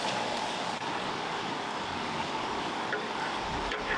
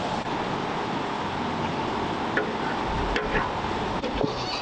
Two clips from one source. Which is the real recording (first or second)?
second